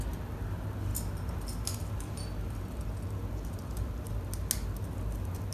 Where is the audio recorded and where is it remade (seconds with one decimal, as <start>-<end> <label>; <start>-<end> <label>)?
0.0-5.5 recorded